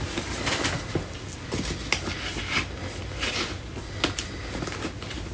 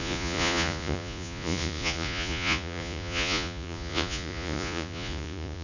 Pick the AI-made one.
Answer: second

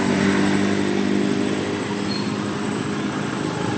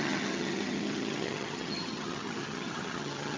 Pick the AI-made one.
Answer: second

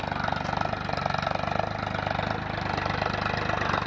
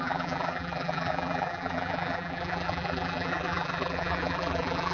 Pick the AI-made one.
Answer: second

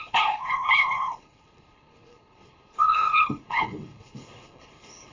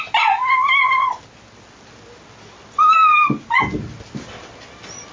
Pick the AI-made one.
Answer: first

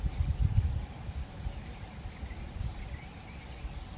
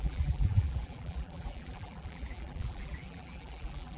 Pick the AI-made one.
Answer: second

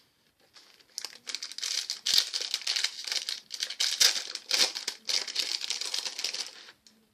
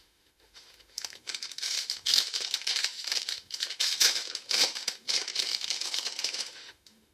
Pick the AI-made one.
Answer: second